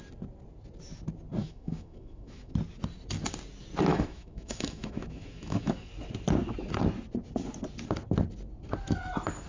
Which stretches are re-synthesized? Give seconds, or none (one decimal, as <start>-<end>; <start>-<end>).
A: 1.4-2.5; 3.9-5.9